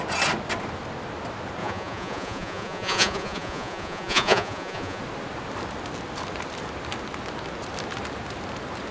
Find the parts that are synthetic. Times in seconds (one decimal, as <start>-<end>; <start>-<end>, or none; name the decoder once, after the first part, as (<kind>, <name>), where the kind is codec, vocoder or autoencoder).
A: 1.6-5.0 (vocoder, Vocos)